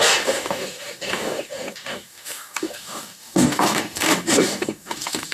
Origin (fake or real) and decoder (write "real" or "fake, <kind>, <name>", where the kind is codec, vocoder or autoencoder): fake, codec, DAC